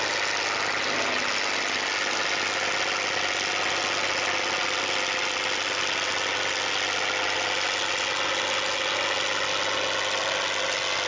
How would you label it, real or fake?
real